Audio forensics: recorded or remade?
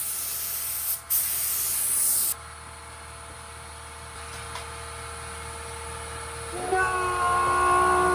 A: recorded